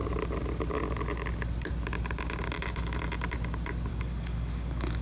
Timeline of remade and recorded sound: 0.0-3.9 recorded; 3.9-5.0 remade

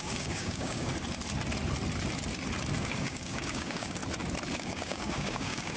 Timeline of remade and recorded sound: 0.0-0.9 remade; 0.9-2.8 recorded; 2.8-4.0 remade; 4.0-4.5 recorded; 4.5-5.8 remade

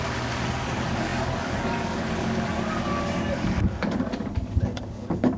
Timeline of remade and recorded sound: 0.0-5.4 remade